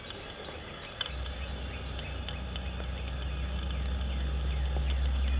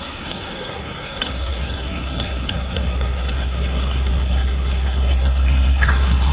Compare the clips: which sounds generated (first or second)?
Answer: second